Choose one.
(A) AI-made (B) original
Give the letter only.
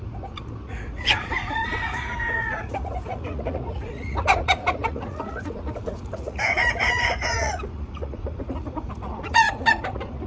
A